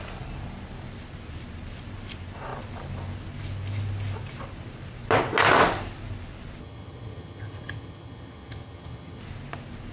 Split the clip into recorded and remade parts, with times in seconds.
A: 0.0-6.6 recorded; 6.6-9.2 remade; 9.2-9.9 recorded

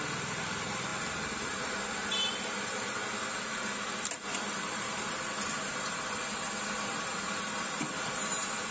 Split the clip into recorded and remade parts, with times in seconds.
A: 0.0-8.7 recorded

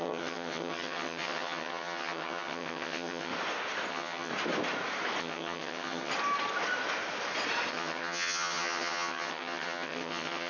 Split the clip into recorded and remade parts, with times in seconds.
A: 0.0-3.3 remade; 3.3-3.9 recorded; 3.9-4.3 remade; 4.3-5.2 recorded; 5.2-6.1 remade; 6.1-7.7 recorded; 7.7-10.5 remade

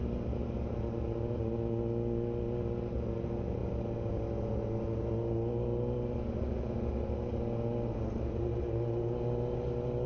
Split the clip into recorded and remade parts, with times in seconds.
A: 0.0-10.1 recorded

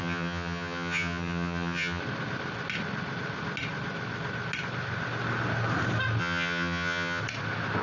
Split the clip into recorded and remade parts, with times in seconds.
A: 0.0-2.0 remade; 2.0-6.2 recorded; 6.2-7.2 remade; 7.2-7.8 recorded